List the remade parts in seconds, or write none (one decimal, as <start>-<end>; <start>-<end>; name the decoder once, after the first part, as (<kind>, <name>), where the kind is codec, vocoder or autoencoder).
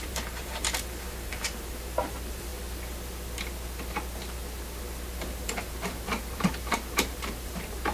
0.0-2.5 (vocoder, BigVGAN v2); 5.2-7.9